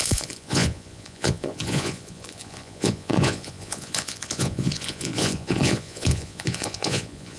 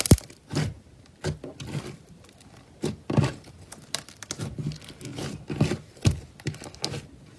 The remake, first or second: first